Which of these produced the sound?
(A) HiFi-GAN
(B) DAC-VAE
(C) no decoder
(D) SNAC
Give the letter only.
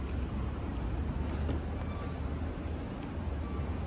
C